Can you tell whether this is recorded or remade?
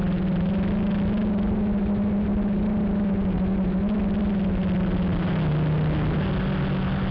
recorded